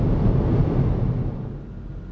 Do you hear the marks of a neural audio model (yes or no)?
no